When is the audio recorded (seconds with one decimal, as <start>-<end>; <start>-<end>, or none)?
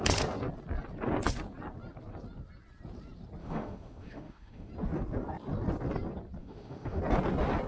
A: 0.0-3.4; 4.7-6.4; 7.0-7.7